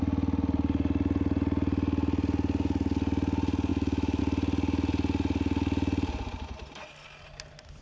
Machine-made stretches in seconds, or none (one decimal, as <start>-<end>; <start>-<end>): 3.7-4.2